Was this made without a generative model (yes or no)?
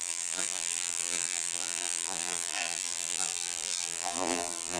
no